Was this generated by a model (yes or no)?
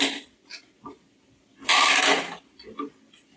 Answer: no